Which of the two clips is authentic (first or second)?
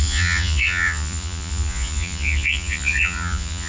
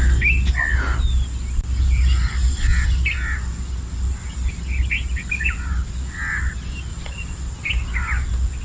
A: second